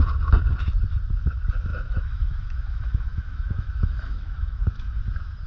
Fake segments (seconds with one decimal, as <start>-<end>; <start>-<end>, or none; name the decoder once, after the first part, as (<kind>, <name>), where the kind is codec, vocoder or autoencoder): 1.7-5.0 (autoencoder, DAC-VAE)